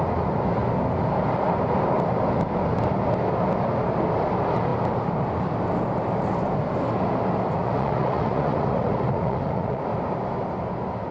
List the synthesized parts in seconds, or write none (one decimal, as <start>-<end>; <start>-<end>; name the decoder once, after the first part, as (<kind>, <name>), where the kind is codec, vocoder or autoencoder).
7.6-9.8 (vocoder, Vocos)